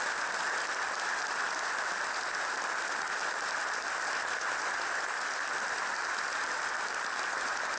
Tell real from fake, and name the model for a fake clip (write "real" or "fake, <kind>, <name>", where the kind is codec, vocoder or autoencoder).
real